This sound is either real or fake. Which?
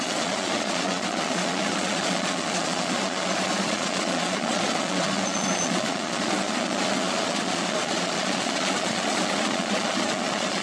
fake